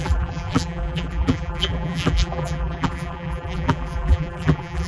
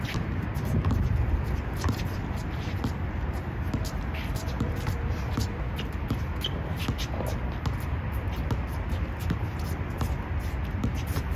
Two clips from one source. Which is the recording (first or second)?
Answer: second